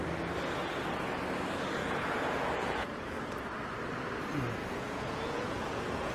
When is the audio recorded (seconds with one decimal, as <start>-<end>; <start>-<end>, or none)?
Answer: 0.0-1.8; 3.0-4.6